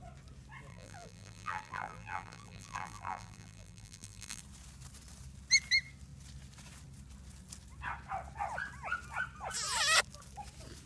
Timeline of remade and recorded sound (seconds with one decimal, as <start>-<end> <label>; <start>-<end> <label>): 0.0-0.7 recorded; 0.7-4.4 remade; 4.4-10.9 recorded